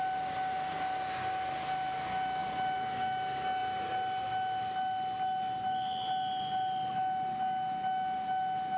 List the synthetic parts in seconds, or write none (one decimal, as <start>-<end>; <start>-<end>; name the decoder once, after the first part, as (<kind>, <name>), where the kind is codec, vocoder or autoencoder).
none